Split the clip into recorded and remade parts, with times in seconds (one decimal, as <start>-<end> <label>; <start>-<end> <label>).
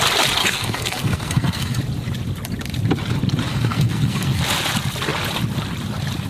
0.0-0.4 recorded; 0.4-1.8 remade; 1.8-3.5 recorded; 3.5-4.4 remade; 4.4-6.3 recorded